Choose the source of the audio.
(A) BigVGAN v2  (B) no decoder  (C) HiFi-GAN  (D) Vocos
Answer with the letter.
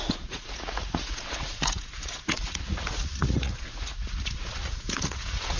D